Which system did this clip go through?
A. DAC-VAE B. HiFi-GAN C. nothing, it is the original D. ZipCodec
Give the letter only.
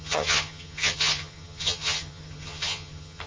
B